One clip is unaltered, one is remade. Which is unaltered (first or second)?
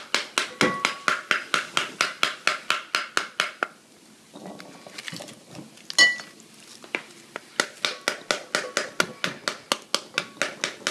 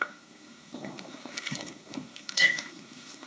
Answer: first